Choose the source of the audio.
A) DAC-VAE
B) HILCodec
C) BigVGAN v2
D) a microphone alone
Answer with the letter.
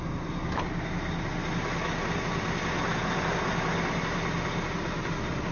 D